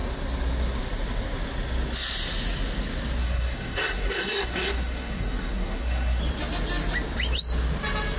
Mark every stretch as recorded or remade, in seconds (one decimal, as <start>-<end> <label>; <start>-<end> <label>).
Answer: 0.0-3.2 recorded; 3.2-6.2 remade; 6.2-8.2 recorded